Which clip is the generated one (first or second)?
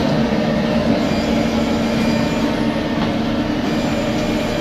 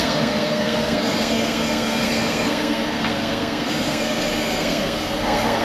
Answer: second